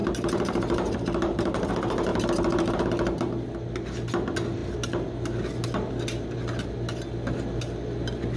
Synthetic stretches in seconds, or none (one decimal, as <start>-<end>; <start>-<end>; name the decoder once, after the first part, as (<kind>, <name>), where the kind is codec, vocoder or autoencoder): 0.0-1.7 (vocoder, BigVGAN v2); 2.1-2.8